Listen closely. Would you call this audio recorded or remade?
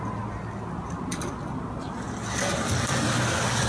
recorded